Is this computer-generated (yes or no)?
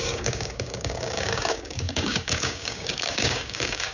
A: yes